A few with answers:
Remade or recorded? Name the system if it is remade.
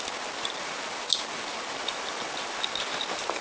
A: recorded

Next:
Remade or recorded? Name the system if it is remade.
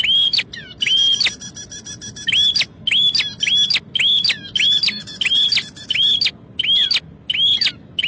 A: recorded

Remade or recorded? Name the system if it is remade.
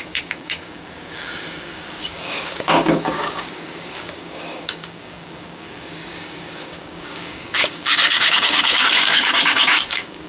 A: remade, codec, DAC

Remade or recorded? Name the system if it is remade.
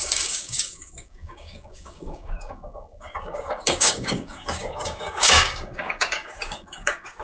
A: remade, codec, DAC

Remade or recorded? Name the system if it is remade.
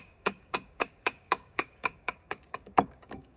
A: remade, codec, DAC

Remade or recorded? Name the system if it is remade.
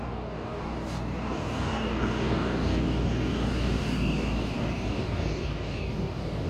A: remade, codec, DAC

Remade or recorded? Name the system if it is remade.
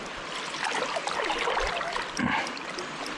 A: recorded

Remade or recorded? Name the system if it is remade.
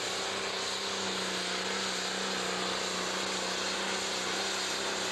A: recorded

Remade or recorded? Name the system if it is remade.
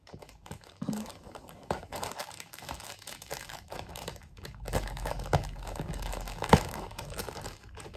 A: remade, codec, DAC